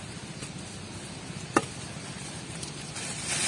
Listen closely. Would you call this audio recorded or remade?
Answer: remade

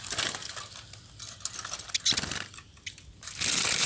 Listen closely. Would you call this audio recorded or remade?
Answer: recorded